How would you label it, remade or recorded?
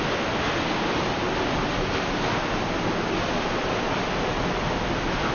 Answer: recorded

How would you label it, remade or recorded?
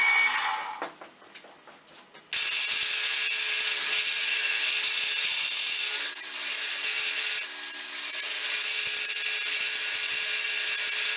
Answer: recorded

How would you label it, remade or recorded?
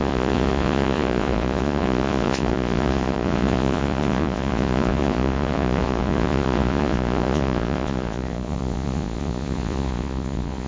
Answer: remade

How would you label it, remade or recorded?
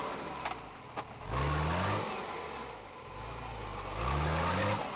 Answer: recorded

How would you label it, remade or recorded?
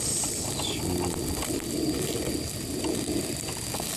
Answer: recorded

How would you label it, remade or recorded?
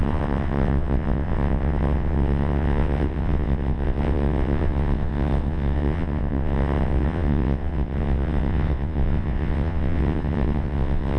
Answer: remade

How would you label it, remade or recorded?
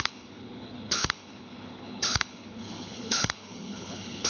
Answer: remade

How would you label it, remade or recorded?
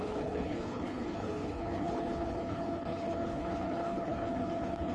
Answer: remade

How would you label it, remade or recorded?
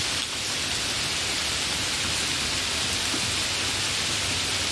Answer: recorded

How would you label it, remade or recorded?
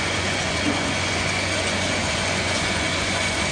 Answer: remade